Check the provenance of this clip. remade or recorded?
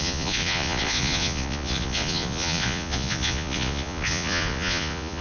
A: remade